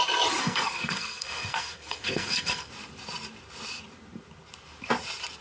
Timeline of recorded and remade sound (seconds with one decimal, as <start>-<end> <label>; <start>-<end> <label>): 0.0-0.4 recorded; 0.4-2.7 remade; 2.7-5.4 recorded